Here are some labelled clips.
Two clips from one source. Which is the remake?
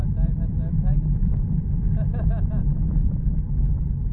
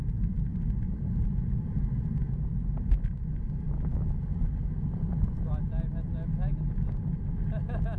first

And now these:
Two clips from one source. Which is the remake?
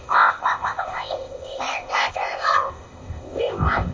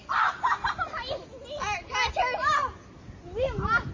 first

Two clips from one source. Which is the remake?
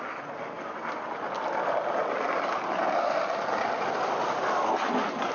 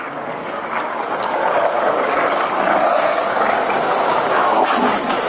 second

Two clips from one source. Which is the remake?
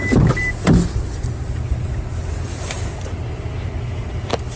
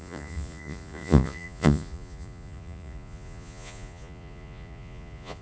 second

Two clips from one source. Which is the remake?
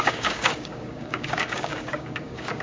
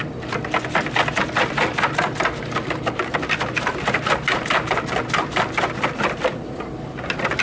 first